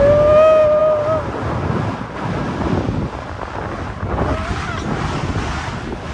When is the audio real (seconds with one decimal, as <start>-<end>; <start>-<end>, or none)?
0.0-6.1